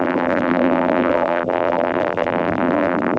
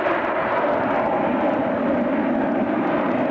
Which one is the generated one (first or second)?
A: first